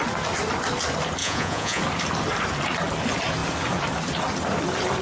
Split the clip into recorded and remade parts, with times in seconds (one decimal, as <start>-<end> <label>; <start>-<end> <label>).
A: 0.0-1.2 recorded; 1.2-1.8 remade; 1.8-5.0 recorded